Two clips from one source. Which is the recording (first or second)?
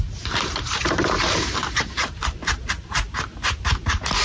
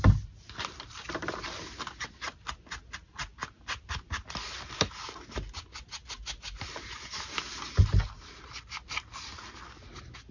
second